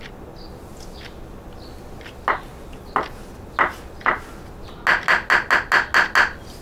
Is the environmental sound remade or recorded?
recorded